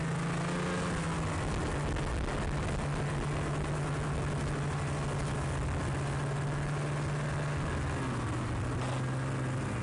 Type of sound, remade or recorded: recorded